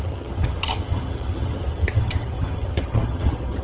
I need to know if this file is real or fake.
fake